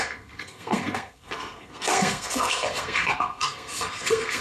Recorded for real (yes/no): no